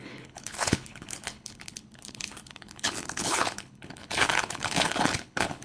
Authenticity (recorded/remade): remade